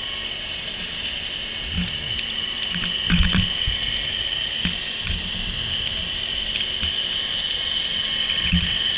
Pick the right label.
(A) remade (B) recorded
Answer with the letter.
B